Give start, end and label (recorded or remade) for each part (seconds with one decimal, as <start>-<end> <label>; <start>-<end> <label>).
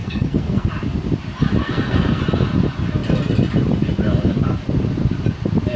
0.0-0.7 remade; 0.7-1.6 recorded; 1.6-2.2 remade; 2.2-5.8 recorded